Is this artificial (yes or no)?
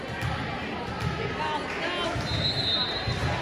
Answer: no